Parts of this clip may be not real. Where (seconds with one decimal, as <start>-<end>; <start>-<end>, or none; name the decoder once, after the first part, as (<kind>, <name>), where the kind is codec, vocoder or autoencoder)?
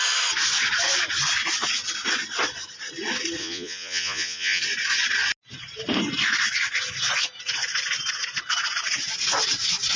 3.4-4.6 (vocoder, Vocos)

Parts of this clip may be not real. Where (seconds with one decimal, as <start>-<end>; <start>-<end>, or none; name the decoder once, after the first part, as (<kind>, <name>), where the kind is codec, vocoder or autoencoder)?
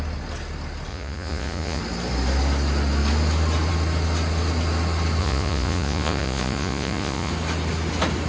0.9-1.8 (vocoder, Vocos); 5.2-7.3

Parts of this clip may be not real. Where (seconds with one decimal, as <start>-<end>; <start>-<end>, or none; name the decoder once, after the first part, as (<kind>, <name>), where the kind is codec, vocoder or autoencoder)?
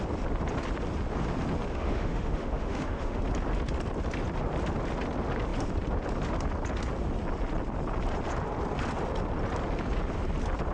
1.7-3.2 (autoencoder, DAC-VAE)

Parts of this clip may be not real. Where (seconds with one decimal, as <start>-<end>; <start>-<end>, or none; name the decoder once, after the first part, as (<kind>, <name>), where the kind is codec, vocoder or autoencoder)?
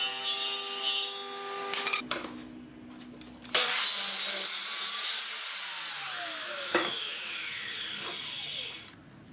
6.4-7.7 (autoencoder, DAC-VAE)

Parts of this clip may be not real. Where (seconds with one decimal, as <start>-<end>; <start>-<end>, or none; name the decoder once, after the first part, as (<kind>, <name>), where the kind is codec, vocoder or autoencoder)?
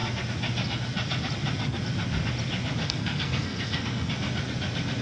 2.8-4.1 (codec, SNAC)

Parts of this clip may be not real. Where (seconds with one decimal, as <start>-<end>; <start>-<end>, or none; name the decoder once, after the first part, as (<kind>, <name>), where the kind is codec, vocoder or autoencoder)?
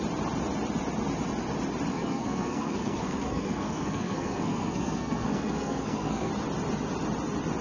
1.9-6.3 (codec, SNAC)